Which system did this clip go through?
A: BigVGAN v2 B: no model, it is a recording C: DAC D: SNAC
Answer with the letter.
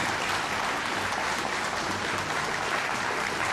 B